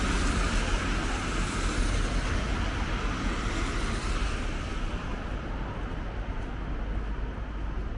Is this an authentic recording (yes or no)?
yes